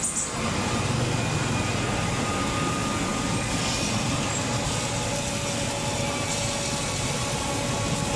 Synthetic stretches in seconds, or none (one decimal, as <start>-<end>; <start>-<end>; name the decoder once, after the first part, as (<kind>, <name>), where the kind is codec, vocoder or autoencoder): none

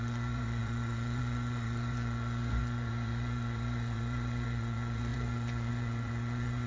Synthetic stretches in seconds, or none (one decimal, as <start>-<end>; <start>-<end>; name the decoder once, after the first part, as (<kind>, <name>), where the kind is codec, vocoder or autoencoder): 0.0-6.7 (vocoder, Vocos)

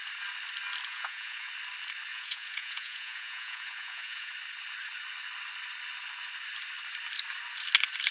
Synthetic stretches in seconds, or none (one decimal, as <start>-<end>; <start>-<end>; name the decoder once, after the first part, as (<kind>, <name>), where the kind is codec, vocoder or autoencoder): 0.9-1.5 (vocoder, Vocos); 2.1-4.3